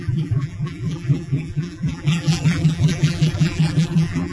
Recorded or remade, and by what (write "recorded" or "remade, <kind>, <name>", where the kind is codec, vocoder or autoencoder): remade, vocoder, BigVGAN v2